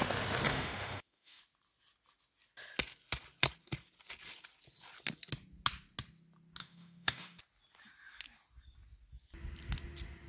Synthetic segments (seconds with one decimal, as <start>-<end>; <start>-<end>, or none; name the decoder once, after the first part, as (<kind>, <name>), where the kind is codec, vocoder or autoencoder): 0.5-1.4 (autoencoder, DAC-VAE); 6.6-7.4